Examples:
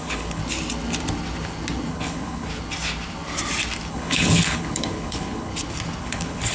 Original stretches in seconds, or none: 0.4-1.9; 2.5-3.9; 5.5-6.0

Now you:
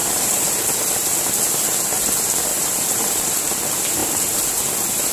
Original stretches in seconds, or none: 0.7-2.5; 3.3-5.1

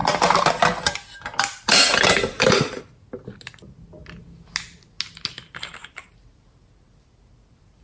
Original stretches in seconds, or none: 0.0-7.8

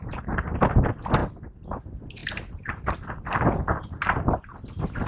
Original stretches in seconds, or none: 0.0-5.1